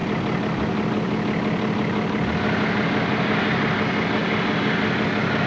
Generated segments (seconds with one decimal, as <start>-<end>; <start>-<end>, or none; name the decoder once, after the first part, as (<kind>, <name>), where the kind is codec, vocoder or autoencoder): none